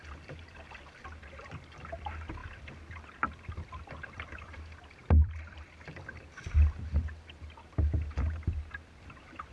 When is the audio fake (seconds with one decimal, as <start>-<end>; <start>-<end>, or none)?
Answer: 5.0-6.4